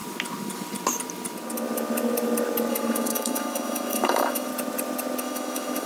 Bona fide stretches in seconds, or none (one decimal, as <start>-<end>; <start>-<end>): 0.0-2.7; 4.5-5.2